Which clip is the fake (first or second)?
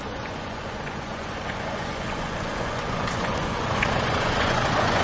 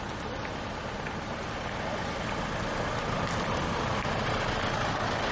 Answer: first